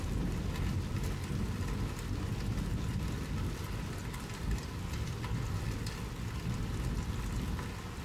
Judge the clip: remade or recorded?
recorded